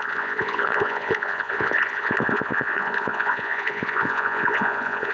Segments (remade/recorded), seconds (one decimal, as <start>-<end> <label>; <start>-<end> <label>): 0.0-5.1 remade